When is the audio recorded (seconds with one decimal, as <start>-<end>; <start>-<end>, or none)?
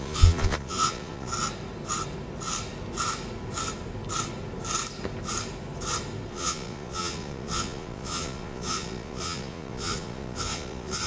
1.3-6.3